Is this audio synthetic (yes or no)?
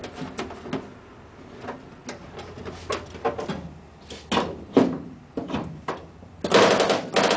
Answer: no